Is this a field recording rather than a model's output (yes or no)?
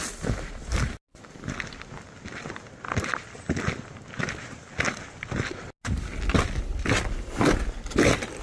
yes